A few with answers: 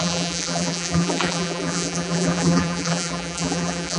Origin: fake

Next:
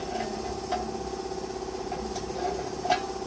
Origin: real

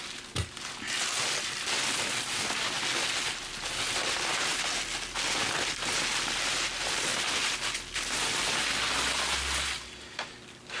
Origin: real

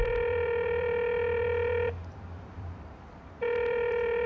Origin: fake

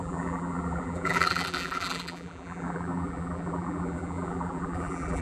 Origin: fake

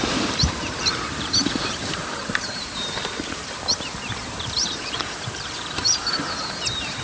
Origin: fake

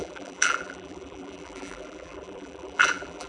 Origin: fake